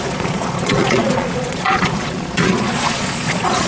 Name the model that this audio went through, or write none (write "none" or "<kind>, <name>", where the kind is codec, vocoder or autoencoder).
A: vocoder, Vocos